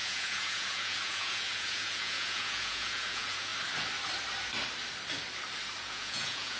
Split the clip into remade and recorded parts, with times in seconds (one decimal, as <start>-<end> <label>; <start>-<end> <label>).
0.0-3.5 remade; 3.5-5.8 recorded; 5.8-6.6 remade